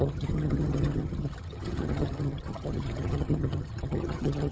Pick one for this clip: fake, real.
fake